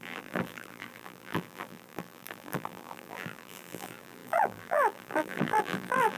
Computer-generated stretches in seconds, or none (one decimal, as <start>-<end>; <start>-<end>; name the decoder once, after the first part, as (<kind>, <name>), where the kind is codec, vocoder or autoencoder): 0.0-6.2 (vocoder, BigVGAN v2)